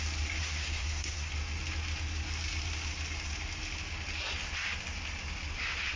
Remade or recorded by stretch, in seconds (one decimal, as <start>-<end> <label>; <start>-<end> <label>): 0.0-0.4 recorded; 0.4-1.3 remade; 1.3-6.0 recorded